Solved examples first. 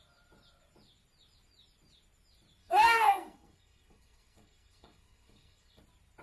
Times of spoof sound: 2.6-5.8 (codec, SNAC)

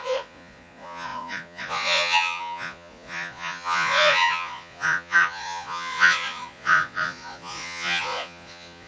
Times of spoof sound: 0.0-8.9 (vocoder, Vocos)

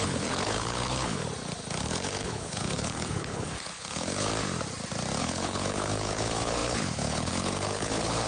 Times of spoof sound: 0.0-1.2 (codec, HILCodec); 1.8-4.3; 5.2-8.3

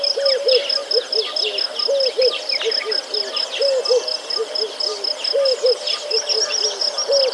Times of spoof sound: none

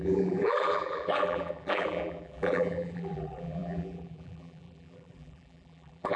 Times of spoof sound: 0.0-6.2 (vocoder, BigVGAN v2)

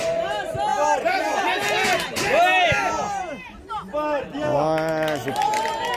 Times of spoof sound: none

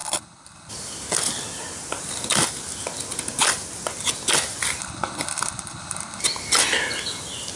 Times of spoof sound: 0.0-0.7 (codec, HILCodec); 4.8-6.2

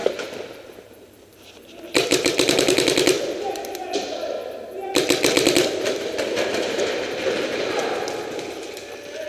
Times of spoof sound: 0.0-2.3 (vocoder, BigVGAN v2)